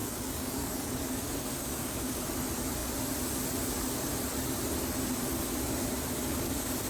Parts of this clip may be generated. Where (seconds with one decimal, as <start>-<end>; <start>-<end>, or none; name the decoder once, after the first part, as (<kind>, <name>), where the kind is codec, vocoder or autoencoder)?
0.0-2.2 (codec, DAC); 6.2-6.9